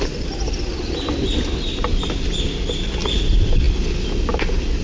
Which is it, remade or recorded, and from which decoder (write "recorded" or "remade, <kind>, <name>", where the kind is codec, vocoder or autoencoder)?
recorded